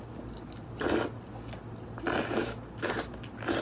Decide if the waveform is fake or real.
real